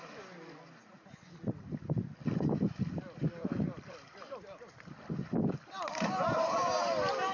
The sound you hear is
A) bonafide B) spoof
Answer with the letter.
A